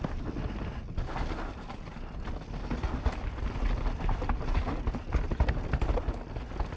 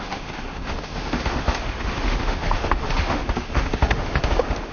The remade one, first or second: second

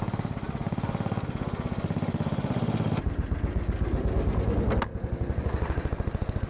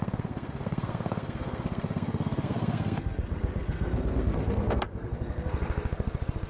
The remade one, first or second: second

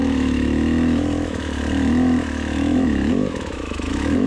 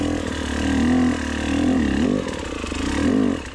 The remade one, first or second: first